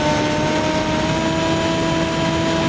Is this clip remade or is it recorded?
recorded